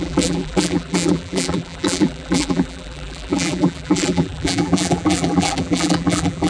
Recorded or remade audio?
remade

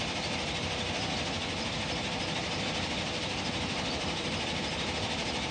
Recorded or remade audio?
remade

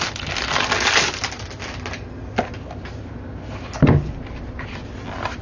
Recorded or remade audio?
recorded